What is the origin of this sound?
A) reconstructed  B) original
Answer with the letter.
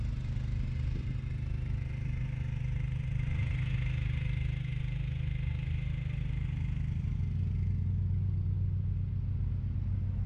B